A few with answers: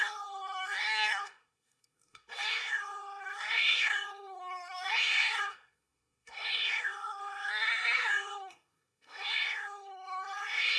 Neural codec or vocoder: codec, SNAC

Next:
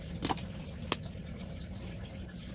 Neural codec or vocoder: none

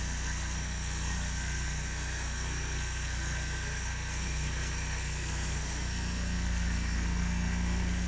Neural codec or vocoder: codec, SNAC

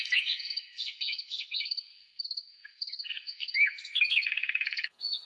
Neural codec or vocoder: codec, SNAC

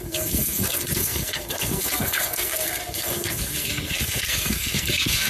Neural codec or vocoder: codec, SNAC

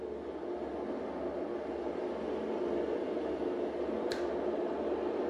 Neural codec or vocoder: none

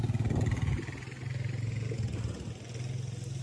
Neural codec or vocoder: none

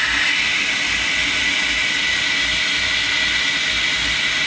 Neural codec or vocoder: none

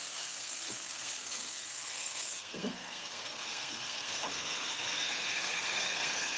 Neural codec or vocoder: codec, SNAC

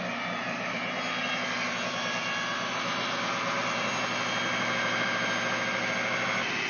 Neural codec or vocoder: none